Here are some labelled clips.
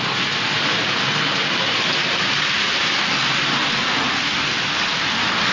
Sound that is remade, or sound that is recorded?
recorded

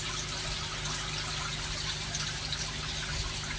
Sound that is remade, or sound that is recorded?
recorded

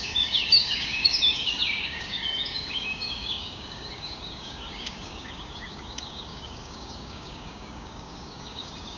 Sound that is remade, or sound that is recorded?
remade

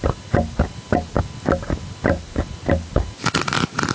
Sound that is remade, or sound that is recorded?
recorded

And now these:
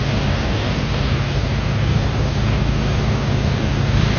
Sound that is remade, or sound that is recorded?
remade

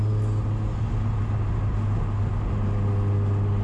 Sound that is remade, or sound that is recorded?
recorded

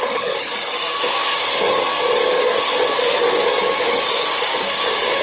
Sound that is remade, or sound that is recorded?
remade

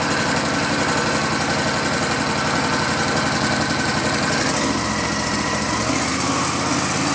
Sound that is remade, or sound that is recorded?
recorded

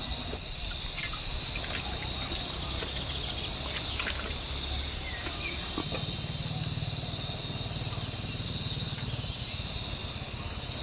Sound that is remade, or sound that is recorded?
recorded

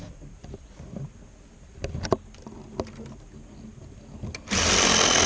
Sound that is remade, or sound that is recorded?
recorded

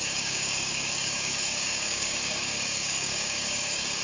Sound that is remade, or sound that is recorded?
remade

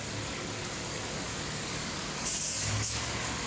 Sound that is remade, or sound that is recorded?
remade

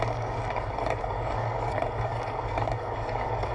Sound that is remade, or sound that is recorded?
remade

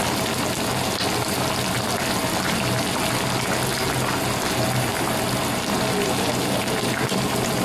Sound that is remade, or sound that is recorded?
recorded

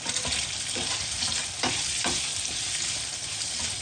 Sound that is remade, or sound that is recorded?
recorded